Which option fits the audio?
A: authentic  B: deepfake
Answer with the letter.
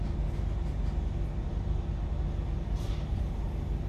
A